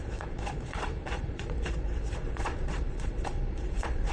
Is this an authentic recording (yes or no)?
no